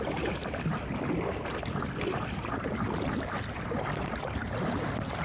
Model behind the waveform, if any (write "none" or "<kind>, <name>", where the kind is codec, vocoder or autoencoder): none